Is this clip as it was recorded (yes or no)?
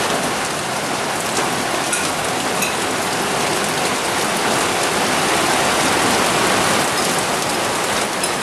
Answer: yes